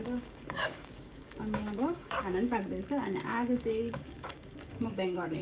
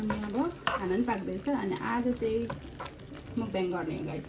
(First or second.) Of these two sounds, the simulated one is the first